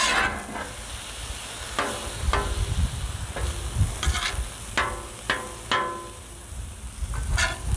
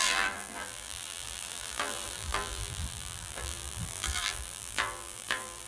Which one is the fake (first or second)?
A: second